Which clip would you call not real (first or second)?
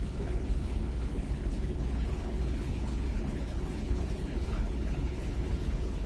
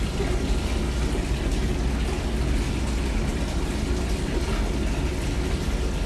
first